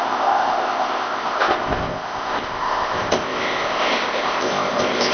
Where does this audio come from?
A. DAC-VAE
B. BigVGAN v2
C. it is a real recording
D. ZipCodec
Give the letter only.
D